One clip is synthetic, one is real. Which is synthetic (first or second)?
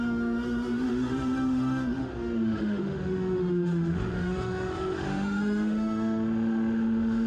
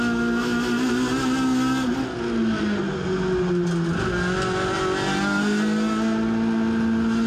first